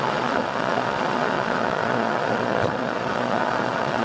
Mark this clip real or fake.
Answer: fake